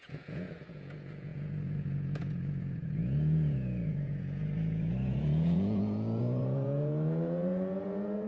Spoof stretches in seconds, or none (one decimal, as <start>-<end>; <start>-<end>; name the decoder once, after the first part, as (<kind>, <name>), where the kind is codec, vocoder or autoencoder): 0.0-8.3 (vocoder, Vocos)